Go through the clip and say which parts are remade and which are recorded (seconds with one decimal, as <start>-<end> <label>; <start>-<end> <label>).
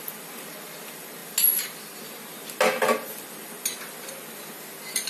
0.0-5.1 recorded